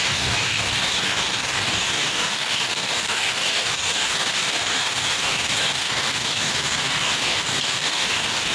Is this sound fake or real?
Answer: fake